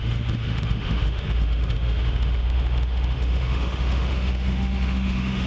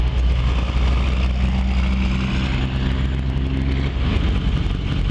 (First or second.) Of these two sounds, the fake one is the first